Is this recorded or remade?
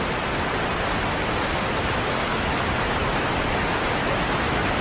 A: recorded